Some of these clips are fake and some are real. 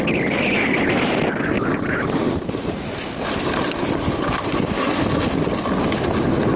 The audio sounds real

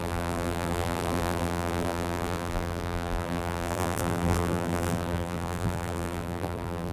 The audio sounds fake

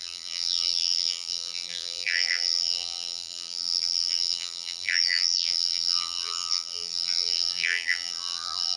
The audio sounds fake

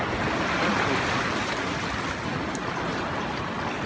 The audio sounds real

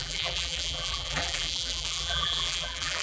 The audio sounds fake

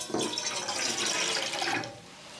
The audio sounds fake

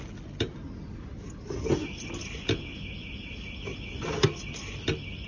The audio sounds real